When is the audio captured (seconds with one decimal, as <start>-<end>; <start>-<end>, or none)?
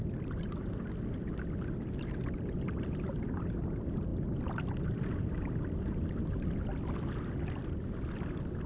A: 0.0-8.7